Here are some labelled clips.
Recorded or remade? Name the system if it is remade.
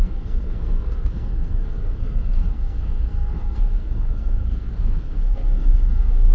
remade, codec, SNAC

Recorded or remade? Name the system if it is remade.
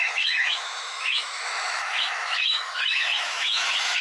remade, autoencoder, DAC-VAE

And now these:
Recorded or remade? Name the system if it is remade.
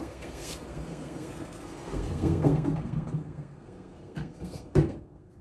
remade, codec, SNAC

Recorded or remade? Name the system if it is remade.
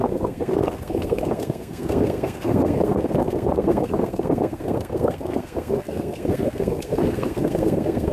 remade, codec, SNAC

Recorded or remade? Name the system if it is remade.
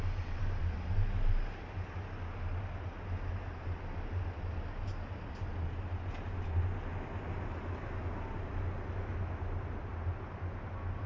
recorded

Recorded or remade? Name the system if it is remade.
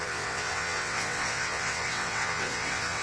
remade, vocoder, WaveNeXt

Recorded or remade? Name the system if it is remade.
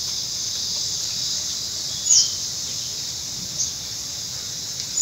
recorded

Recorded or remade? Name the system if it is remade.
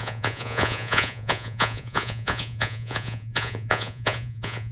remade, vocoder, Vocos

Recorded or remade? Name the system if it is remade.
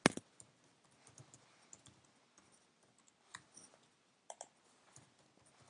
recorded